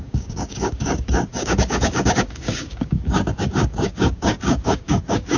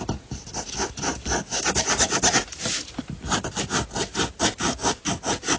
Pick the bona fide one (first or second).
second